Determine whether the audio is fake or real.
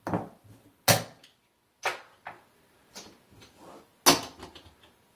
real